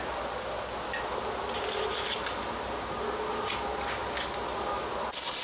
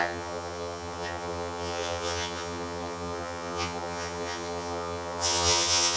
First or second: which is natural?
first